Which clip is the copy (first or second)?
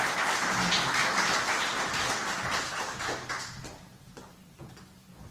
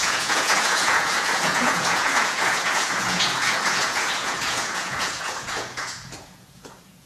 second